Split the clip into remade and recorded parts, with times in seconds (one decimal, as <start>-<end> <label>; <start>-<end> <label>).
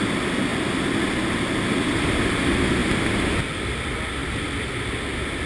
0.0-5.5 recorded